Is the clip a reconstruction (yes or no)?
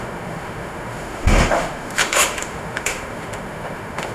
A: yes